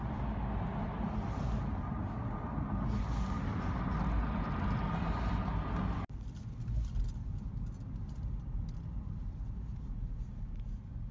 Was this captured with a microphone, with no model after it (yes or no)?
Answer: yes